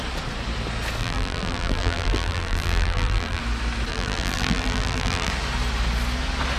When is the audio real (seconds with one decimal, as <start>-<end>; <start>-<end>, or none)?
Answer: 0.0-1.0; 3.4-3.9; 5.3-6.6